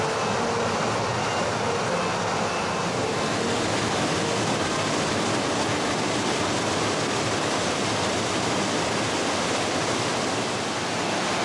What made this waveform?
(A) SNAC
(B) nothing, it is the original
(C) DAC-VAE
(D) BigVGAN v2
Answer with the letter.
B